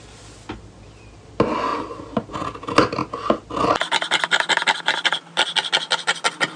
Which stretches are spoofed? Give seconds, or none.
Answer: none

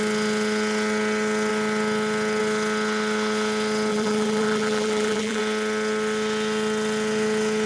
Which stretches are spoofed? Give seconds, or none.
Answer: 3.9-5.4 (vocoder, BigVGAN v2)